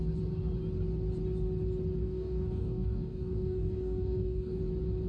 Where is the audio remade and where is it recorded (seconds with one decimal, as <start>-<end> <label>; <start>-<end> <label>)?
0.0-2.0 recorded; 2.0-4.6 remade; 4.6-5.1 recorded